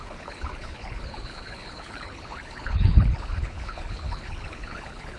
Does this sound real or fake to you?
fake